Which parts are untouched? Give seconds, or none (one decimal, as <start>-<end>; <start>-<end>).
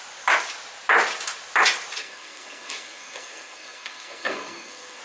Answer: 0.0-2.0